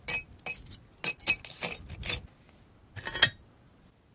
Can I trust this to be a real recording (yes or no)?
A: yes